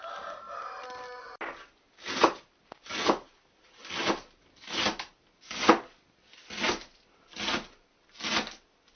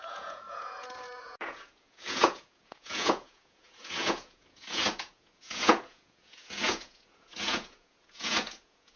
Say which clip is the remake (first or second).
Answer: second